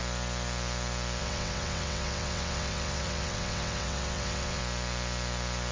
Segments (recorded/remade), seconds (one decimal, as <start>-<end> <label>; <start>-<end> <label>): 0.0-1.2 recorded; 1.2-4.6 remade; 4.6-5.7 recorded